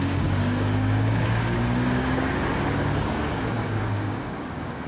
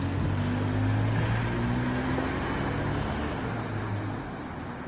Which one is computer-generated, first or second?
first